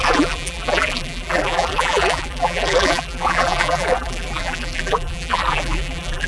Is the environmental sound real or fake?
fake